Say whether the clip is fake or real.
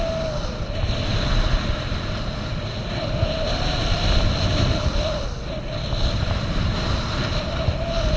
real